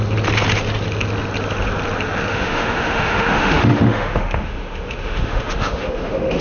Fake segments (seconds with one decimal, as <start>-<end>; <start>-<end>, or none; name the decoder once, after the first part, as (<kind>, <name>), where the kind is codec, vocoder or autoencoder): 2.3-6.4 (autoencoder, DAC-VAE)